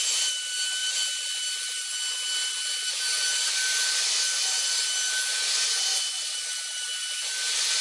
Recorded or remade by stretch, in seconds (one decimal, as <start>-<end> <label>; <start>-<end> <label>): 0.0-7.8 recorded